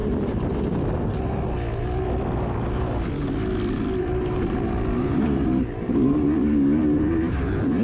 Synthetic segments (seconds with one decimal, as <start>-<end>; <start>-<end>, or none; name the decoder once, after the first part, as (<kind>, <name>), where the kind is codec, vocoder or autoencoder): 4.0-7.8 (vocoder, BigVGAN v2)